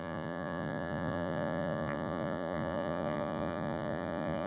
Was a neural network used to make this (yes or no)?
yes